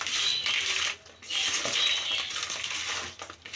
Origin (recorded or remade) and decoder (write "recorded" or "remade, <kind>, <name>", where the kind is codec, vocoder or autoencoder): recorded